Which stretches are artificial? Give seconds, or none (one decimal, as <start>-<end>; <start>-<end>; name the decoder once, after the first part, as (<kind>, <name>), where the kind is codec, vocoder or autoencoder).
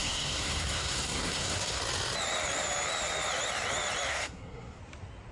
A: 0.0-1.8 (codec, SNAC); 4.1-4.8